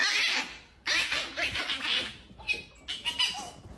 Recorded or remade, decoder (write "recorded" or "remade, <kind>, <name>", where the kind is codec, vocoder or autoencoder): recorded